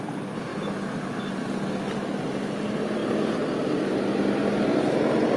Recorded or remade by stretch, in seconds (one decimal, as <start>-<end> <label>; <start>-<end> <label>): 0.0-5.4 recorded